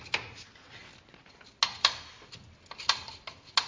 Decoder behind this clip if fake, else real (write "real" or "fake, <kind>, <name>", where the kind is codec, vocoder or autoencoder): real